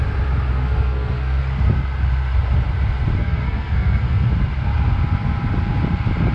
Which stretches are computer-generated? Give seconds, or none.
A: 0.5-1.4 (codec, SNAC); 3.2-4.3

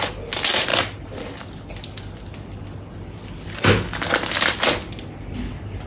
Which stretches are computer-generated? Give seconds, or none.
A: none